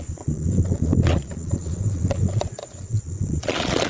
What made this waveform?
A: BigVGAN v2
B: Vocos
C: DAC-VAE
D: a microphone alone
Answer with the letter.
B